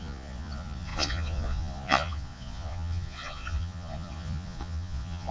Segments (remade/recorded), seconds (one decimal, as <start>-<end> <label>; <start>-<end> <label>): 0.0-5.3 remade